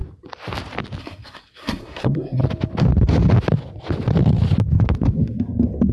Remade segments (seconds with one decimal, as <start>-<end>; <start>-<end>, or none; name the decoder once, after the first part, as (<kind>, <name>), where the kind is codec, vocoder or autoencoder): 1.0-2.4 (codec, SNAC)